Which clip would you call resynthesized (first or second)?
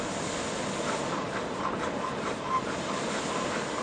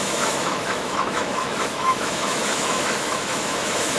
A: second